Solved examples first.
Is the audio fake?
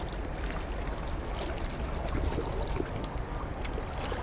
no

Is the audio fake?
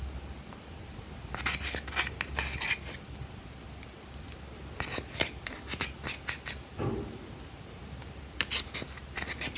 no